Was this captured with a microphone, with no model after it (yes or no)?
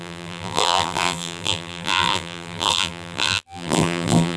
no